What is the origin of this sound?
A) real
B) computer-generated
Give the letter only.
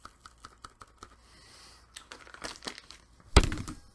A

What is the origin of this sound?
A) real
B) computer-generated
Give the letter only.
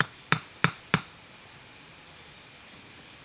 A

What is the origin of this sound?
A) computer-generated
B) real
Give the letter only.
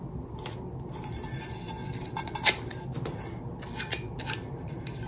B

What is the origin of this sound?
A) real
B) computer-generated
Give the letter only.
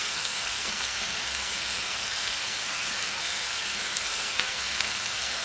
B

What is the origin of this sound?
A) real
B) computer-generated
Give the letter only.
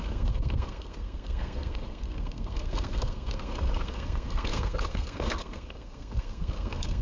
B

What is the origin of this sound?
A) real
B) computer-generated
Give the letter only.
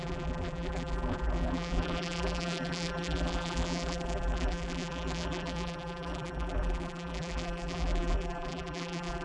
B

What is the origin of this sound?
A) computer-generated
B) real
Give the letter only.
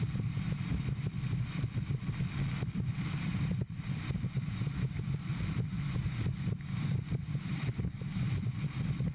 A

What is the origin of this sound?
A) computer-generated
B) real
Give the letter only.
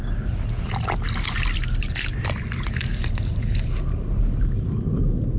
B